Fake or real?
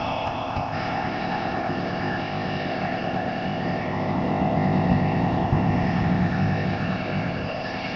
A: fake